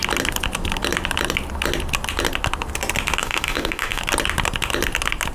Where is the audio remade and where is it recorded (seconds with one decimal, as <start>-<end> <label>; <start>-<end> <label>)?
0.0-3.2 recorded; 3.2-4.0 remade; 4.0-5.3 recorded

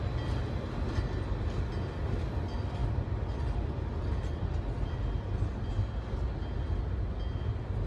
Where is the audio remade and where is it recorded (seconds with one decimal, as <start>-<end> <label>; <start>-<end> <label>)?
0.0-7.9 recorded

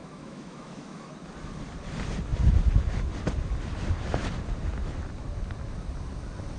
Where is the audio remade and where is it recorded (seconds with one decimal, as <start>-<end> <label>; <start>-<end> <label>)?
0.0-1.1 remade; 1.1-6.6 recorded